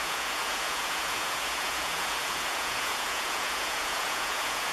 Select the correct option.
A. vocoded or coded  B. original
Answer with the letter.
A